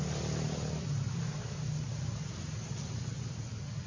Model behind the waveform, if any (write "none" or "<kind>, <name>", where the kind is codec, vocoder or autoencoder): none